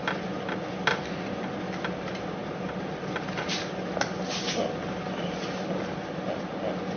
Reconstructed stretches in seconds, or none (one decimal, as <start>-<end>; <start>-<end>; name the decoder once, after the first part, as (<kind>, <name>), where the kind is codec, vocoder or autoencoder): none